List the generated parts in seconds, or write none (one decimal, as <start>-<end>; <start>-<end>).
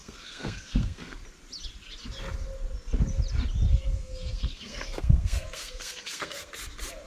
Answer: 0.0-1.2; 3.7-6.5